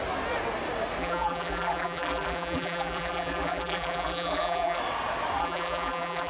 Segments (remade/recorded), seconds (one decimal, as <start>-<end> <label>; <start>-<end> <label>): 0.0-1.0 recorded; 1.0-4.8 remade; 4.8-5.4 recorded; 5.4-6.3 remade